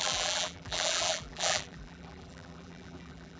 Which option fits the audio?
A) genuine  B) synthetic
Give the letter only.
B